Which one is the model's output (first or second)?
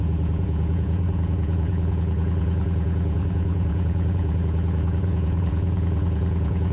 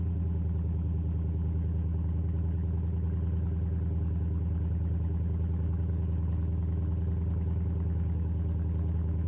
first